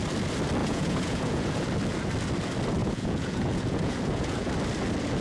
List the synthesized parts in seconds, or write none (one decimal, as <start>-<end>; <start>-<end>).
0.6-1.6; 2.8-4.5